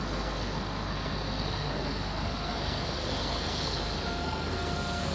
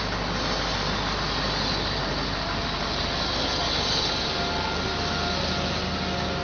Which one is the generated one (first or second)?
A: first